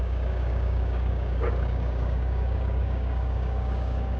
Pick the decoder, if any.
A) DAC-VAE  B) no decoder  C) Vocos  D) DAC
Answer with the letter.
D